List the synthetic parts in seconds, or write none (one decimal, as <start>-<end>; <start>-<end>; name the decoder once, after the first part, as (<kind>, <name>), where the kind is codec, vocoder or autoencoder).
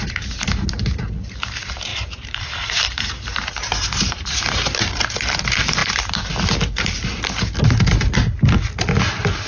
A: 1.9-5.0 (vocoder, BigVGAN v2); 5.8-6.3